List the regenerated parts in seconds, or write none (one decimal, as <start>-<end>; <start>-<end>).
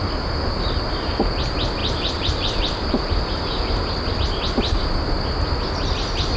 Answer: none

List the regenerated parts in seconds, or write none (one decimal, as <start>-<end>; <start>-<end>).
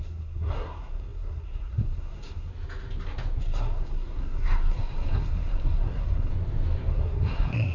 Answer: 0.0-2.5; 3.4-6.3; 6.9-7.7